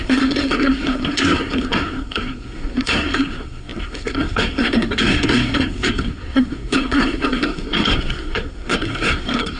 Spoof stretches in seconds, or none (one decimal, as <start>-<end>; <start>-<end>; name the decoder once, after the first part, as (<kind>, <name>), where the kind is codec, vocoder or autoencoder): 0.0-9.6 (codec, SNAC)